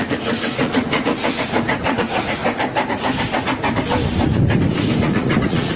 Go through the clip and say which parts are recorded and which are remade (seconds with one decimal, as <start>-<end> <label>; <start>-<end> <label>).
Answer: 0.0-1.1 remade; 1.1-1.8 recorded; 1.8-2.4 remade; 2.4-5.0 recorded; 5.0-5.8 remade